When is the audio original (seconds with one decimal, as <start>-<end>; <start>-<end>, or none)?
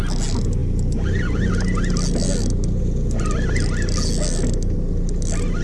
0.0-5.6